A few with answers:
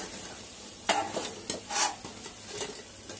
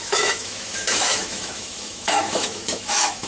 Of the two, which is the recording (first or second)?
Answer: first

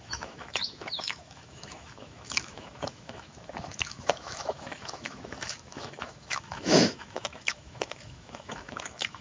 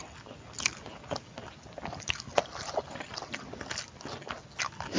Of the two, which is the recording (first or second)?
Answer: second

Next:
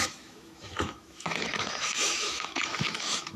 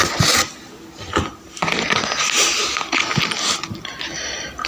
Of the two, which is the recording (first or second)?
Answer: second